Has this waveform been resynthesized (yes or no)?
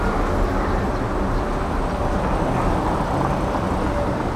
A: no